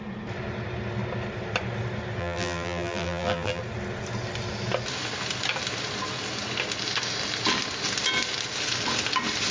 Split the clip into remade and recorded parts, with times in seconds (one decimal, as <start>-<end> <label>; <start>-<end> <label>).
0.0-2.2 recorded; 2.2-3.6 remade; 3.6-9.5 recorded